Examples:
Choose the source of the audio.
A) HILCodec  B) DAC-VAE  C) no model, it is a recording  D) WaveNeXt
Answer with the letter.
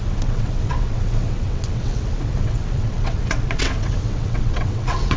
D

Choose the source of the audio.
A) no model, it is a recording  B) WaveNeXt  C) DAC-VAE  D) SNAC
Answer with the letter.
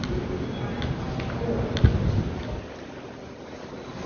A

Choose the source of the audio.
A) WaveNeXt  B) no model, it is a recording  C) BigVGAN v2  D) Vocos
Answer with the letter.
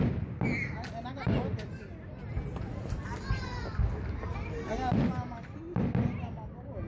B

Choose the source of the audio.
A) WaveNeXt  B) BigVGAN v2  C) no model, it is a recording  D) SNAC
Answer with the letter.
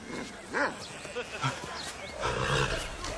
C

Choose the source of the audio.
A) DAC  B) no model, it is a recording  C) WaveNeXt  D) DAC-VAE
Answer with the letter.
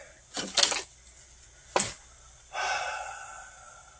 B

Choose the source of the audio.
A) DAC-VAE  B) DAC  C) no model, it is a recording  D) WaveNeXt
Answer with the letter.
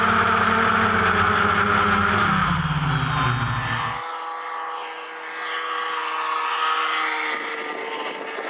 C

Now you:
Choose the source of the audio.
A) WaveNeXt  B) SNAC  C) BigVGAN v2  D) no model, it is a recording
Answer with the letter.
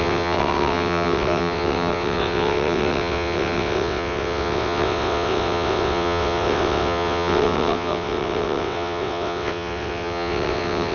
A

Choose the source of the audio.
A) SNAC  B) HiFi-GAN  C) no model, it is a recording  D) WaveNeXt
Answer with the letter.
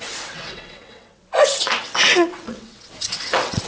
D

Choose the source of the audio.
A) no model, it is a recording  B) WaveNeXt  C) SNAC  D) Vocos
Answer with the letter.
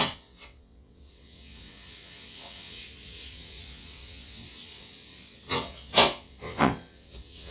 B